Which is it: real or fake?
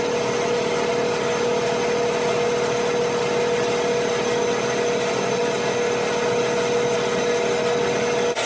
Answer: real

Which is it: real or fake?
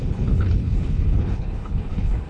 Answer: fake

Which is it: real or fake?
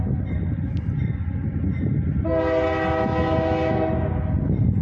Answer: real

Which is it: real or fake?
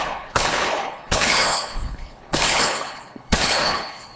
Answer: fake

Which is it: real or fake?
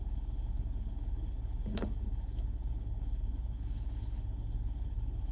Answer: fake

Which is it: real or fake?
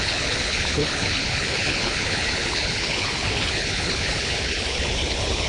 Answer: fake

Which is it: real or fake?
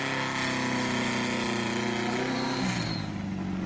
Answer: real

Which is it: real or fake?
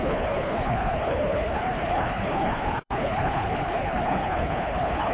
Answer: fake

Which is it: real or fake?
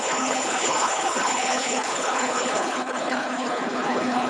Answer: fake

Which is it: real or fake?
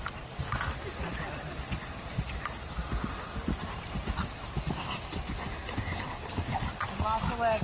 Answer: real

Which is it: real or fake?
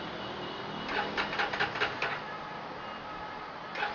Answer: real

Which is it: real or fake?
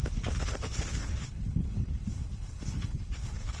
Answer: fake